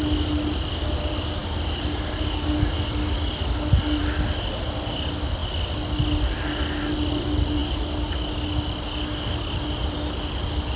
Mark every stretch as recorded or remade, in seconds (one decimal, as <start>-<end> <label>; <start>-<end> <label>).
0.0-10.8 recorded